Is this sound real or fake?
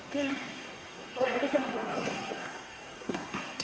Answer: fake